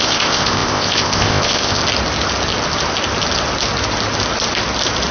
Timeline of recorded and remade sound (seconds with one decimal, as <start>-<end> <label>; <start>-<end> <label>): 0.0-1.8 remade; 1.8-5.1 recorded